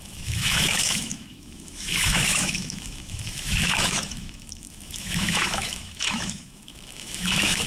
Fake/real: fake